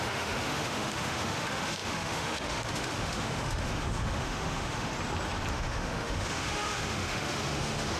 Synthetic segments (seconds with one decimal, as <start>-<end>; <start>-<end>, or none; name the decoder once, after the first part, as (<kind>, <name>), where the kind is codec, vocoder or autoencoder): 0.0-4.9 (autoencoder, DAC-VAE); 5.5-8.0

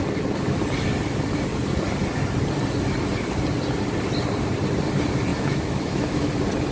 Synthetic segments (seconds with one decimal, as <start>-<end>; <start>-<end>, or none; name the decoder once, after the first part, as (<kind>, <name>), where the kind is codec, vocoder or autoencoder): 5.3-6.3 (autoencoder, DAC-VAE)

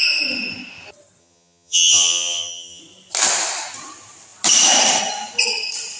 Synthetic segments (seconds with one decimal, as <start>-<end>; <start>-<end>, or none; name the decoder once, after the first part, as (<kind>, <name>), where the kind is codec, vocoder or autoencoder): 1.2-2.8 (vocoder, HiFi-GAN)

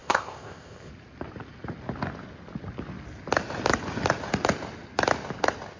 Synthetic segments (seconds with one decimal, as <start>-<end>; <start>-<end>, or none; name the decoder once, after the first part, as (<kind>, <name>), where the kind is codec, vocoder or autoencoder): 0.0-0.9 (codec, ZipCodec)